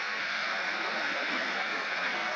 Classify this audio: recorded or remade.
remade